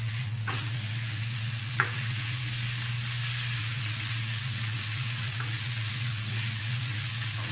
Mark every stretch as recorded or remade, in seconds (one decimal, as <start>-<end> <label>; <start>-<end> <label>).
0.0-2.4 remade; 2.4-3.6 recorded; 3.6-7.5 remade